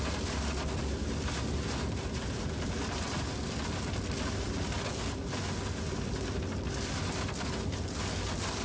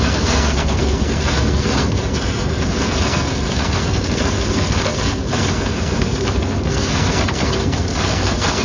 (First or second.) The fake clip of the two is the second